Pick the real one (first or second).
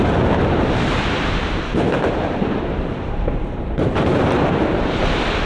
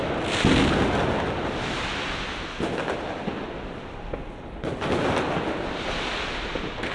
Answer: second